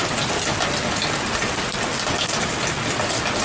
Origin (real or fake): real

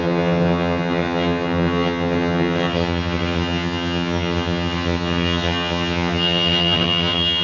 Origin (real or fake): fake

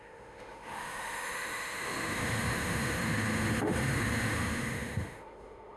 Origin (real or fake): fake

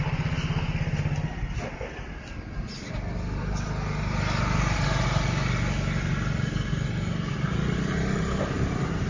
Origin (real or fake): real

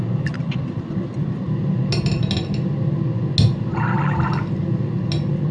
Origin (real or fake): real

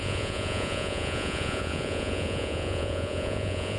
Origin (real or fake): fake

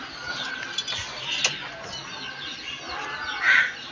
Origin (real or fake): real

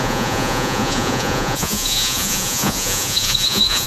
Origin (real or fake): fake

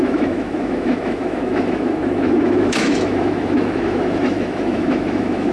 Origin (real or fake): fake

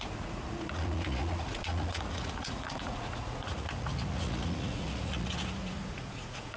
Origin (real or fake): fake